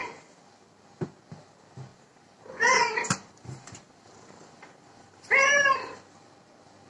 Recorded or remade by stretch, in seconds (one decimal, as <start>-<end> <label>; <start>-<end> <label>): 0.0-0.5 remade; 0.5-1.9 recorded; 1.9-6.0 remade; 6.0-6.9 recorded